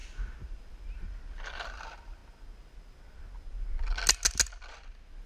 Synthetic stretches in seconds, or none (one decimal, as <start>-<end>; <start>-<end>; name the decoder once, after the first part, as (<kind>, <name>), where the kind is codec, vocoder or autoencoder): none